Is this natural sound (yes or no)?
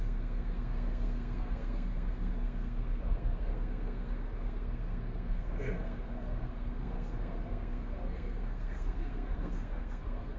no